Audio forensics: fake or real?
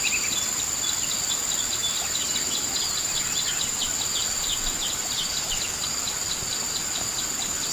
real